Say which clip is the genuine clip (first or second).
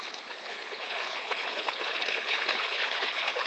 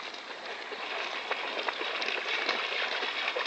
second